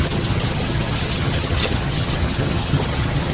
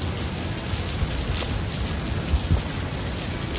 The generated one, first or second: first